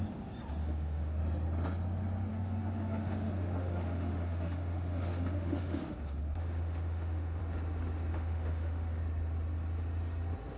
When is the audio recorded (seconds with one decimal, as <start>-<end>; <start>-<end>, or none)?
0.0-0.6; 1.2-2.3; 7.4-8.1; 9.0-10.6